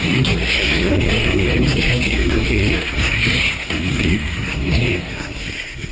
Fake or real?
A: fake